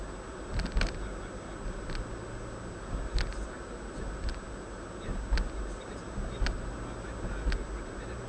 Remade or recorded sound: recorded